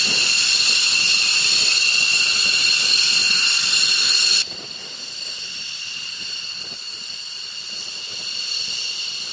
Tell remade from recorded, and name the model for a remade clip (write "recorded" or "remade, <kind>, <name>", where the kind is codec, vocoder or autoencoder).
remade, vocoder, BigVGAN v2